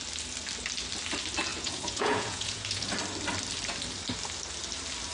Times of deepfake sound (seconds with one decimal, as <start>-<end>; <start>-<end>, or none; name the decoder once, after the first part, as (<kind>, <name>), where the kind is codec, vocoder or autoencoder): 1.5-2.9 (vocoder, Vocos)